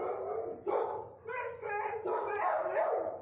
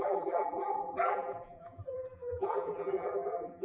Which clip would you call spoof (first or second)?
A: second